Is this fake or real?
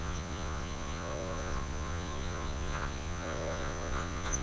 fake